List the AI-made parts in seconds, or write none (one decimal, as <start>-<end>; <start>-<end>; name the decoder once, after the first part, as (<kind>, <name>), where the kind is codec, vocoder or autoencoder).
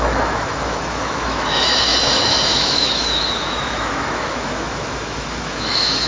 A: 0.0-6.1 (autoencoder, DAC-VAE)